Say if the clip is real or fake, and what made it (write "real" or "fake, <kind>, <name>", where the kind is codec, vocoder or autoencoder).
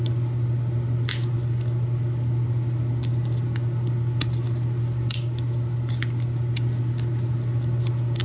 real